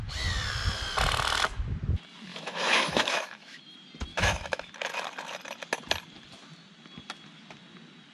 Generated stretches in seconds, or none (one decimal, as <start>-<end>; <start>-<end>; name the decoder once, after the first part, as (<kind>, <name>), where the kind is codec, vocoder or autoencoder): 2.3-3.6 (autoencoder, DAC-VAE); 4.1-4.7